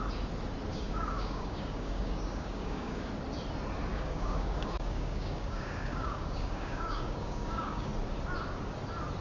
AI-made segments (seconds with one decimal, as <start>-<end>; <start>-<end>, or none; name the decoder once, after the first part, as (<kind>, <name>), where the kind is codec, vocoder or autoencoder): 0.7-3.1 (codec, DAC); 3.9-7.9